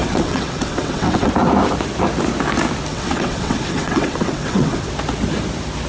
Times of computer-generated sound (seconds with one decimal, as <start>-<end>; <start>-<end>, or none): 0.0-1.3; 2.9-4.9